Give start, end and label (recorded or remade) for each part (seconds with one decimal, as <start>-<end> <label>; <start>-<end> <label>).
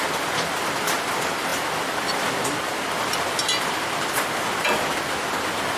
0.0-5.8 recorded